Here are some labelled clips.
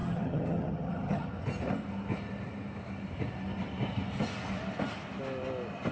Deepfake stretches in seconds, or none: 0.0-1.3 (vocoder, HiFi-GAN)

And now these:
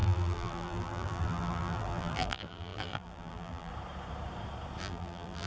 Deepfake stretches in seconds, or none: 0.0-3.7 (vocoder, BigVGAN v2); 4.8-5.5

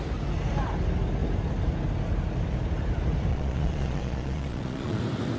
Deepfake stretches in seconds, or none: 3.3-5.0 (vocoder, Vocos)

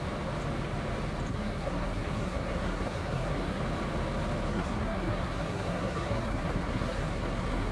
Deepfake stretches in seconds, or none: 1.3-3.6 (codec, SNAC); 4.5-7.7

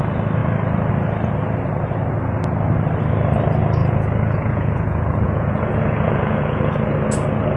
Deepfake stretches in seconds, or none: 3.8-6.8 (vocoder, Vocos)

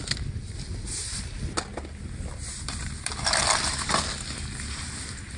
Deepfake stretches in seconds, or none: none

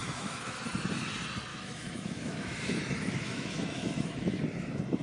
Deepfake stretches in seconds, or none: 0.0-0.7 (autoencoder, DAC-VAE); 1.5-4.4